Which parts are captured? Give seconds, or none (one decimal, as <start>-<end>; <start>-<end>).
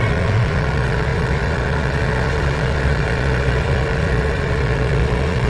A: none